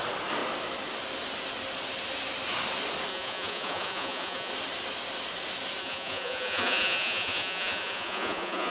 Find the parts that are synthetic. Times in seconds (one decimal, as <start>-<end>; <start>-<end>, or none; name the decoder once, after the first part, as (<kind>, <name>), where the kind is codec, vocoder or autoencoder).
3.1-4.5 (vocoder, Vocos); 5.8-8.7